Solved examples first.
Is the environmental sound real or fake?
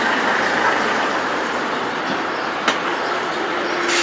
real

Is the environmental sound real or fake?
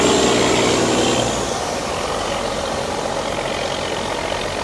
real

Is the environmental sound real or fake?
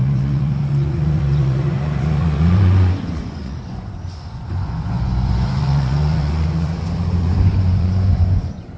fake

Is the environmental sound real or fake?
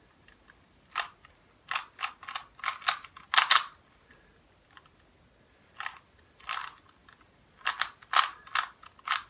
real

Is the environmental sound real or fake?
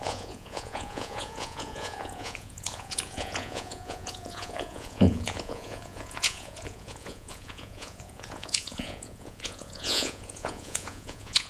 fake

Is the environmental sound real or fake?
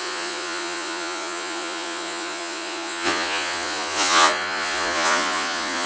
fake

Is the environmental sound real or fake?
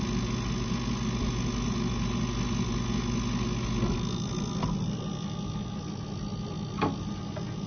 real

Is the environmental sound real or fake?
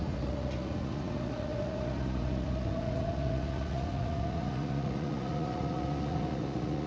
fake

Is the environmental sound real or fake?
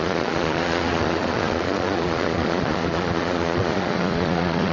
fake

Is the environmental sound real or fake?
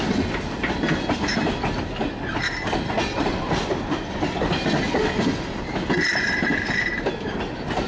real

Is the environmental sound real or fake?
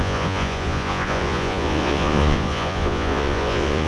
fake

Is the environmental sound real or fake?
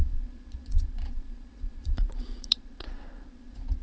fake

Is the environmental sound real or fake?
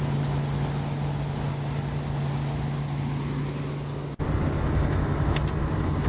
real